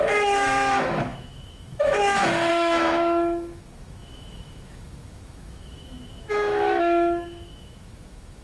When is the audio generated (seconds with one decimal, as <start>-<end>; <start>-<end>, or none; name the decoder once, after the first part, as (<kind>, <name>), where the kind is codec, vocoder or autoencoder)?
0.0-8.4 (autoencoder, DAC-VAE)